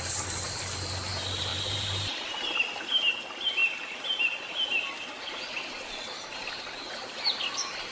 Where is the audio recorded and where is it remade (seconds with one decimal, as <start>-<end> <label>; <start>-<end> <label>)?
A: 0.0-1.5 recorded; 1.5-2.5 remade; 2.5-7.9 recorded